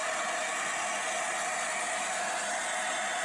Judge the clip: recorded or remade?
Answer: recorded